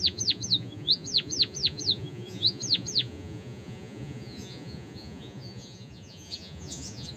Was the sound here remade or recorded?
remade